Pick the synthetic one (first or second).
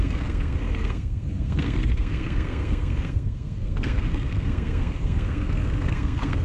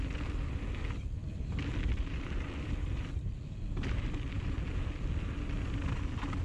first